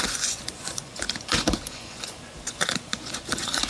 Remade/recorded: remade